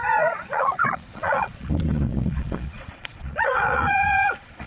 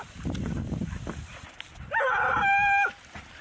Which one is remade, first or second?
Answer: first